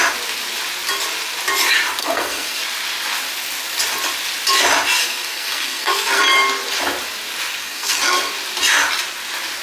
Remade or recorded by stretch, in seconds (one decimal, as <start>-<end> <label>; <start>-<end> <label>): 0.0-2.0 recorded; 2.0-2.6 remade; 2.6-5.0 recorded; 5.0-6.2 remade; 6.2-7.6 recorded; 7.6-8.3 remade; 8.3-9.6 recorded